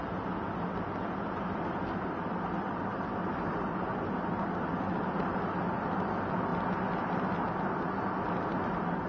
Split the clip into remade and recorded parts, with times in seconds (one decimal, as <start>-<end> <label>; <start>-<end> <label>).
0.0-9.1 recorded